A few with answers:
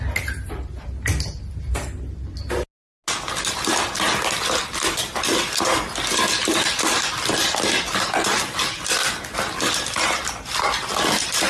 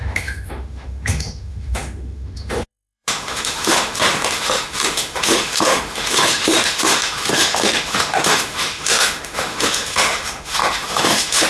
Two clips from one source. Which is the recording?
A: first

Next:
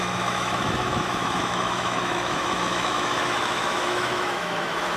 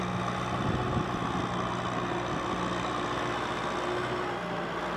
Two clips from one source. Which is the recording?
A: second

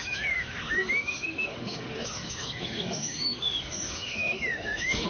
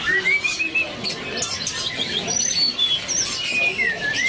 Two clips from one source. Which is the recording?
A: second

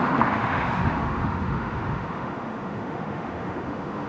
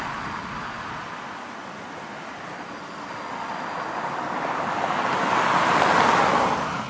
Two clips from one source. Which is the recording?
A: second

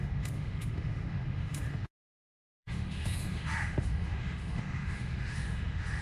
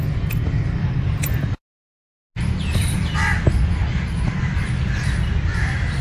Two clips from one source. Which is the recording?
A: second